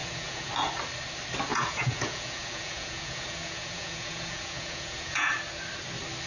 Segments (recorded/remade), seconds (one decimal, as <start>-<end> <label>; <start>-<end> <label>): 0.0-0.5 remade; 0.5-1.5 recorded; 1.5-5.3 remade; 5.3-6.3 recorded